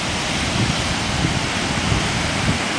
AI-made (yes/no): no